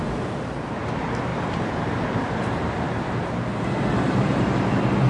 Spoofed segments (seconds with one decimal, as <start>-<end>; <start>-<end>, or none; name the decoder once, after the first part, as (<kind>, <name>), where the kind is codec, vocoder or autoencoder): 1.3-3.3 (vocoder, BigVGAN v2)